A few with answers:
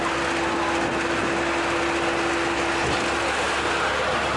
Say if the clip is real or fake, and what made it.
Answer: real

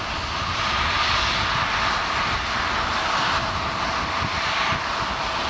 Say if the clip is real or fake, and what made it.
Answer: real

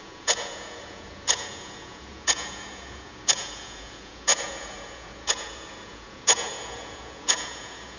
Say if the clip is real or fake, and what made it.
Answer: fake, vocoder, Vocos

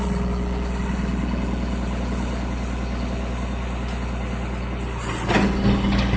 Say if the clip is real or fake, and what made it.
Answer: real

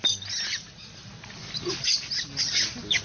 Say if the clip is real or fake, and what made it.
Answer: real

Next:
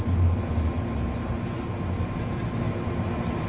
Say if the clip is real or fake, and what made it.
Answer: real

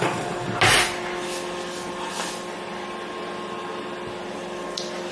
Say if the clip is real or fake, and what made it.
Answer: real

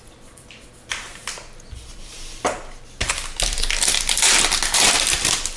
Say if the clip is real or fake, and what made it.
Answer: real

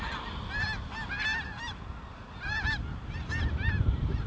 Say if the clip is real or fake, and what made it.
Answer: real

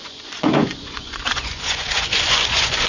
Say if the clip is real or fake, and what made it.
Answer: fake, vocoder, Vocos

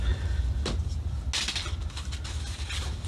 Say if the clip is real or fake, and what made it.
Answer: real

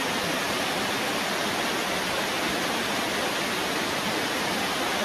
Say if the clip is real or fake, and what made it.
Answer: real